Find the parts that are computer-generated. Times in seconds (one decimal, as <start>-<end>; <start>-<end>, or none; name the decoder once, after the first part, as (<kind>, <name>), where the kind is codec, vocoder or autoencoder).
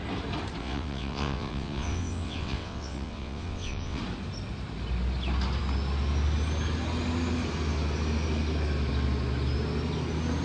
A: 0.6-4.0 (vocoder, WaveNeXt)